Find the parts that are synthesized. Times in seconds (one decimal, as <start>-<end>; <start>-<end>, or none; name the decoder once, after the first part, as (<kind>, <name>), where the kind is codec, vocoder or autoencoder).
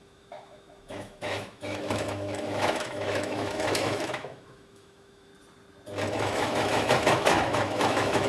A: 0.0-5.3 (autoencoder, DAC-VAE); 6.1-8.3